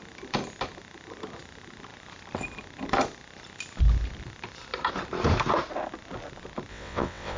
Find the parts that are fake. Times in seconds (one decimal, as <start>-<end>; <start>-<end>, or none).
6.7-7.4

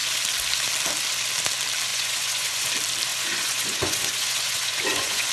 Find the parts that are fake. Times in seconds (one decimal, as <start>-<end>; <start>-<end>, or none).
1.9-2.7; 3.1-5.3

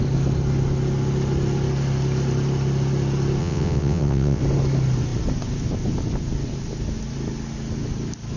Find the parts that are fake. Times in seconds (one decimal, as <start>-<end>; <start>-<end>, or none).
3.4-4.4

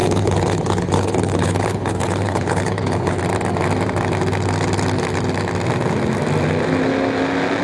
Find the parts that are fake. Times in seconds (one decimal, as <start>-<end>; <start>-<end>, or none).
0.0-3.2

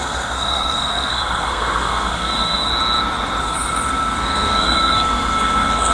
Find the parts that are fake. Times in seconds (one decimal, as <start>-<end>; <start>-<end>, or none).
0.0-2.7; 3.4-5.9